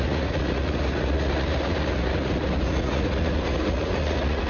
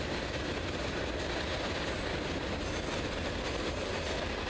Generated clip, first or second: first